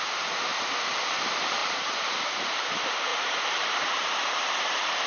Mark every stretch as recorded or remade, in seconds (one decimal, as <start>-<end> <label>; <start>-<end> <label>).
0.0-0.5 remade; 0.5-1.1 recorded; 1.1-5.1 remade